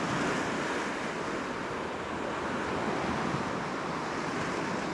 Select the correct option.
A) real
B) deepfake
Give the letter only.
A